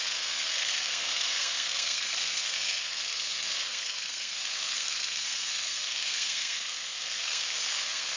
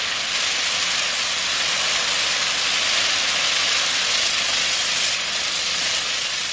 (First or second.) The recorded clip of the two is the second